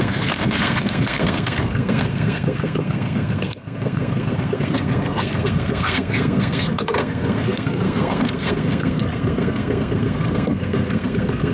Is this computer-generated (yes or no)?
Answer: yes